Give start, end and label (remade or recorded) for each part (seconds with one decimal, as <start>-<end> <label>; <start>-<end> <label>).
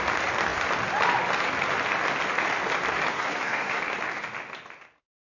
0.0-3.1 recorded; 3.1-3.8 remade; 3.8-5.4 recorded